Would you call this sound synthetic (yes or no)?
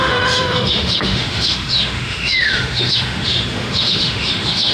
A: yes